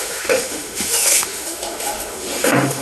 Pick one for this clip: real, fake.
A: fake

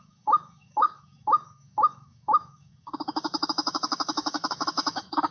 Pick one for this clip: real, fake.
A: fake